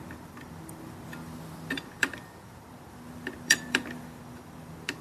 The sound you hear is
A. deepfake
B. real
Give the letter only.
A